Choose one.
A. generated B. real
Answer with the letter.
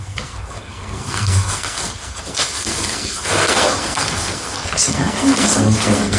A